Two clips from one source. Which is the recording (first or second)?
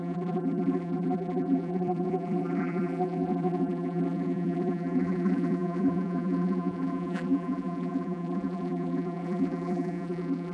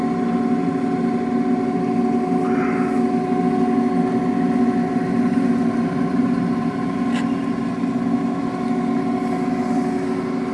second